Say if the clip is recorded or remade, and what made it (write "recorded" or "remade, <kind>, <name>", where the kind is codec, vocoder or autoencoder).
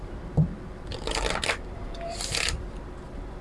remade, vocoder, BigVGAN v2